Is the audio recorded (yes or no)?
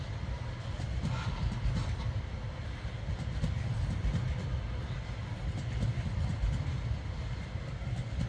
yes